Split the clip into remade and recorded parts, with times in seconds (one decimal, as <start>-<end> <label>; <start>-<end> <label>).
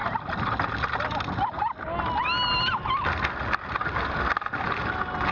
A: 0.0-0.7 remade; 0.7-5.3 recorded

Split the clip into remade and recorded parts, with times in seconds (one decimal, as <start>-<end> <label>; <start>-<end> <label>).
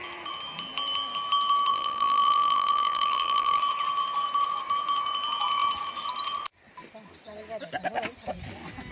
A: 0.0-1.7 recorded; 1.7-3.6 remade; 3.6-8.9 recorded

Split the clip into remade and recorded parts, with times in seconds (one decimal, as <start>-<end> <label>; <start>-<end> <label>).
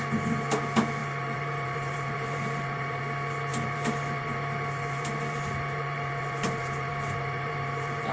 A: 0.0-1.0 recorded; 1.0-3.0 remade; 3.0-3.5 recorded; 3.5-8.1 remade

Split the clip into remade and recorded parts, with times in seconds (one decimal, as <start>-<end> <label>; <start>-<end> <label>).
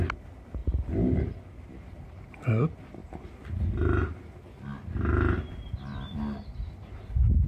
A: 0.0-7.5 recorded